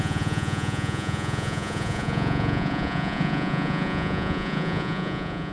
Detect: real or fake fake